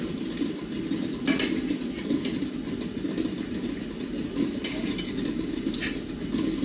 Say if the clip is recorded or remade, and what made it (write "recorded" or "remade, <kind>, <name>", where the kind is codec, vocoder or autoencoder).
recorded